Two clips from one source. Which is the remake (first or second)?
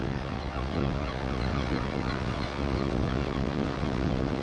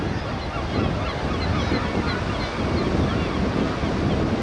first